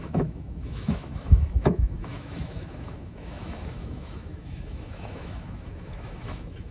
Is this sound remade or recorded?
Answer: remade